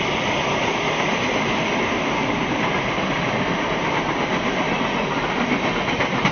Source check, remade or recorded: recorded